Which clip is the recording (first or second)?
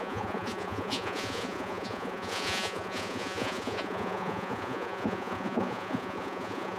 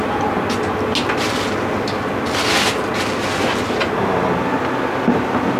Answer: second